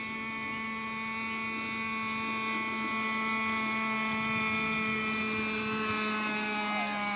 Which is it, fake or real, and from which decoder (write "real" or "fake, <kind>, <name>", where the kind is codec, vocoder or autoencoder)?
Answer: real